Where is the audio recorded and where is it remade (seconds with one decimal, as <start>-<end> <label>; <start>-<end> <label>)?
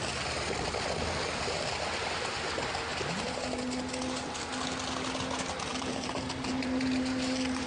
0.0-5.7 recorded; 5.7-7.7 remade